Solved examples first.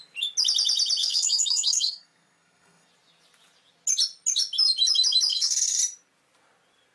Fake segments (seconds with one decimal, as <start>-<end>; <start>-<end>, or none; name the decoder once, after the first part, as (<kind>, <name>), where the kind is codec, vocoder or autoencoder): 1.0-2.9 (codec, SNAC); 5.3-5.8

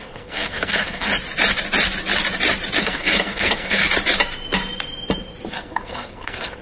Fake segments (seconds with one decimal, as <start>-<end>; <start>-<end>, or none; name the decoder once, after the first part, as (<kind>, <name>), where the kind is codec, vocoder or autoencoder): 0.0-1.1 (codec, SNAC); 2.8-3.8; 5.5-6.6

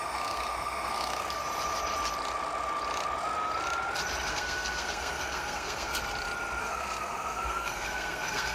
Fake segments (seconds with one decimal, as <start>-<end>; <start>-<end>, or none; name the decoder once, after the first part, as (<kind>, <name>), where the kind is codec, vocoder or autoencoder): 0.0-1.4 (codec, SNAC); 4.3-6.0; 6.6-8.5